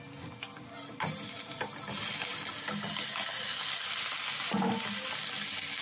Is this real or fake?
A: real